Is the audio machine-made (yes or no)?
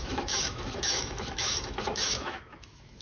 yes